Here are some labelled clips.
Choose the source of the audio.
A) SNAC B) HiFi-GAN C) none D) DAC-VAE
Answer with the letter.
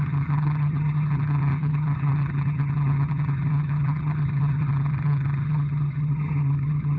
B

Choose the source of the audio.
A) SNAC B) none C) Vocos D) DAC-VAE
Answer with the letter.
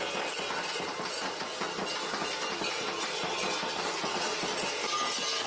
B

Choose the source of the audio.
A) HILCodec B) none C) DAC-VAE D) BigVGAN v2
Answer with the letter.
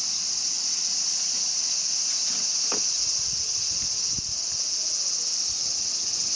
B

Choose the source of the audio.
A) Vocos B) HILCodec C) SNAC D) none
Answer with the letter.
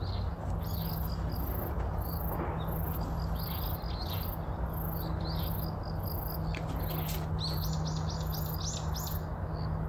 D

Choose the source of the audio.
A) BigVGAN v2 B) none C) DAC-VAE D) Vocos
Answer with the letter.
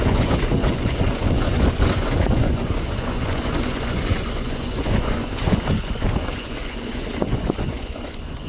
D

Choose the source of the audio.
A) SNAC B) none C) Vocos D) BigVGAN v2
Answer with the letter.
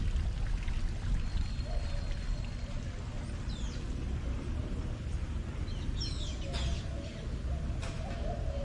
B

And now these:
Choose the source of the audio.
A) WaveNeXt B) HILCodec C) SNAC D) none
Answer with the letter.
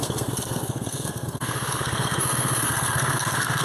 C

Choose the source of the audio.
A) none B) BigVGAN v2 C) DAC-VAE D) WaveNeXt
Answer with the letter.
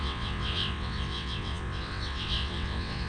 D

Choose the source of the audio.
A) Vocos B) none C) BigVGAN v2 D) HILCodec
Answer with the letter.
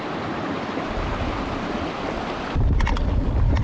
B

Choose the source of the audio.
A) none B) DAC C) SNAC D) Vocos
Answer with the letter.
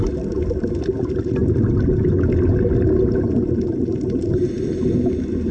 A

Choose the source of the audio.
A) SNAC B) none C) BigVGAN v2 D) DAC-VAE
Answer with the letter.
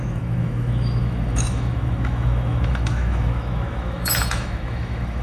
D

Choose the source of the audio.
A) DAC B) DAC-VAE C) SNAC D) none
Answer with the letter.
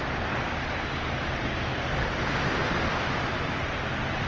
D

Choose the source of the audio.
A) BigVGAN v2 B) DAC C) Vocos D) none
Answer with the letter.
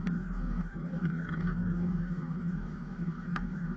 B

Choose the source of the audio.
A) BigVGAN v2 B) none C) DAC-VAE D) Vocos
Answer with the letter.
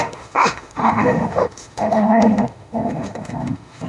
C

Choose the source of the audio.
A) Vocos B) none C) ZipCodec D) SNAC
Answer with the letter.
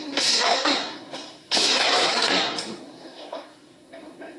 D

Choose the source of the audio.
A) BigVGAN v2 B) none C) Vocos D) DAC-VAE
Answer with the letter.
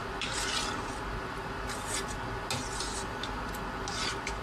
B